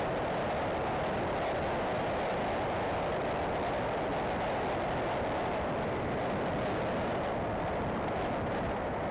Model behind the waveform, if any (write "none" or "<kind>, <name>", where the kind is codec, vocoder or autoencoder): none